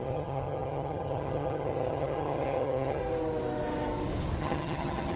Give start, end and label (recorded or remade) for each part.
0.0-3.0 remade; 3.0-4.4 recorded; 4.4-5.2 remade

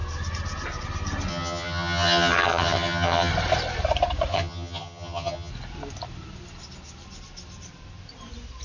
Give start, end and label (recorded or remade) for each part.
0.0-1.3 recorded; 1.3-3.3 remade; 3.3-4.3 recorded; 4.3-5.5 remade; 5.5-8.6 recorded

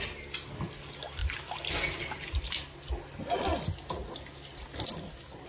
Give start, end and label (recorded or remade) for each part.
0.0-5.5 recorded

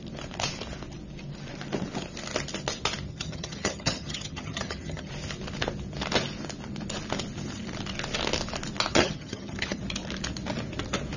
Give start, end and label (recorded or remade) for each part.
0.0-3.1 recorded; 3.1-5.1 remade; 5.1-8.9 recorded; 8.9-9.8 remade; 9.8-11.2 recorded

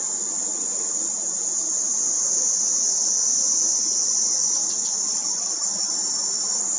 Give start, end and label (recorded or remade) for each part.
0.0-5.1 recorded; 5.1-5.9 remade; 5.9-6.8 recorded

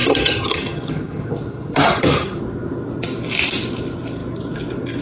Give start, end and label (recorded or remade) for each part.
0.0-2.4 remade; 2.4-5.0 recorded

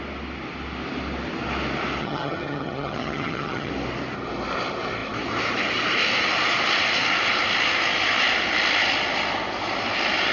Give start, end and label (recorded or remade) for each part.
0.0-2.0 recorded; 2.0-3.7 remade; 3.7-10.3 recorded